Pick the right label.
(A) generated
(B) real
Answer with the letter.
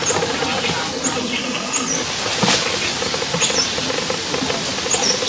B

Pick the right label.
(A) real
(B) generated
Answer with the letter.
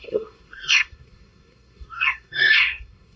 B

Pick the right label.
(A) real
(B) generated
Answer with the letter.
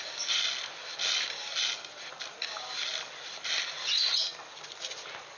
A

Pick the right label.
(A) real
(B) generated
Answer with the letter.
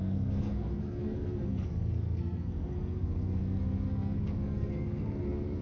B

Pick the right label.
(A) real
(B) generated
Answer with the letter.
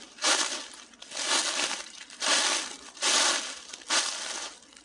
A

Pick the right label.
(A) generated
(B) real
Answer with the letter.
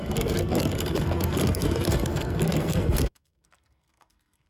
A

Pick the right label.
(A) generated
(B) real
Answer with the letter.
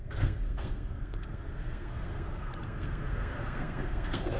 A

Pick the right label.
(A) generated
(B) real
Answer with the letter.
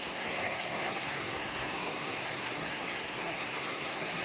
A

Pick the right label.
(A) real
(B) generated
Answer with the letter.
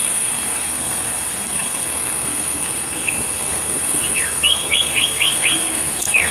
B